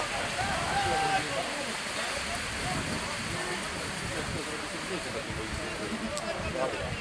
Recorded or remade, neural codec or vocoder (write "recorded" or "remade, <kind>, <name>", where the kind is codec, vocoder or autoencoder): recorded